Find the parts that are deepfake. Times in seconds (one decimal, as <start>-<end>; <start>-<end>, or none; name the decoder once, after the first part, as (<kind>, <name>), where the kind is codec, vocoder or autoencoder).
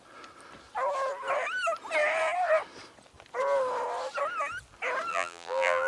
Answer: 5.1-5.9 (vocoder, BigVGAN v2)